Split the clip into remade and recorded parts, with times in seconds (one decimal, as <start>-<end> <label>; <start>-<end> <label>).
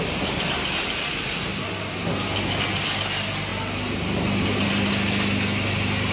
0.0-6.1 recorded